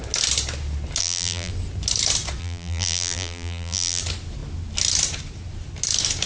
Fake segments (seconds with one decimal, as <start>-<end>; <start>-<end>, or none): 1.0-1.5; 2.4-4.0